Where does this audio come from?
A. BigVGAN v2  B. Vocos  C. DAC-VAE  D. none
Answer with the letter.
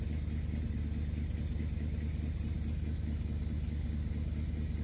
D